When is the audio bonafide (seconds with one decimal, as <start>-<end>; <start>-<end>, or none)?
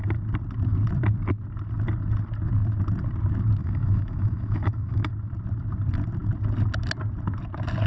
0.0-3.6; 5.1-7.9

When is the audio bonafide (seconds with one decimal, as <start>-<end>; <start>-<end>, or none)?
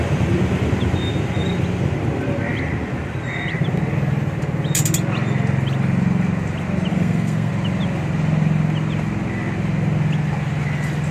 0.0-6.9; 7.5-11.1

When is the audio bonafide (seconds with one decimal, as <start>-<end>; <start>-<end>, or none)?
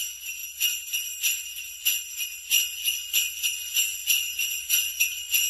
0.0-5.5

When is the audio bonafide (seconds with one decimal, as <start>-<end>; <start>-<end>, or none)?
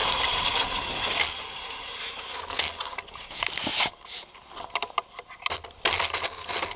0.0-2.0; 2.6-6.8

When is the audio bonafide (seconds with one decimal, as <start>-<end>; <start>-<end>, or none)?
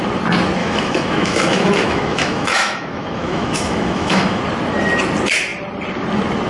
0.0-0.6; 4.4-6.5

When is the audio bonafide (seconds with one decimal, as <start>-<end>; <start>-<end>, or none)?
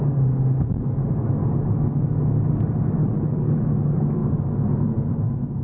0.0-3.0; 3.7-5.6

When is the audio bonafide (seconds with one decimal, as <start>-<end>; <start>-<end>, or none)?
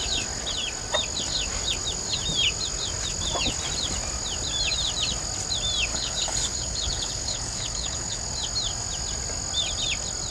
0.0-5.9; 8.3-10.3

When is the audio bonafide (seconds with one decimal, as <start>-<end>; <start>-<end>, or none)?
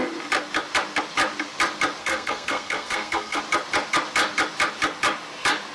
0.0-2.0; 3.4-5.7